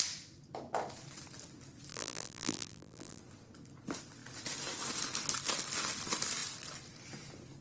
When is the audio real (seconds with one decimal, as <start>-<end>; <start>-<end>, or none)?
0.0-1.9; 3.2-7.6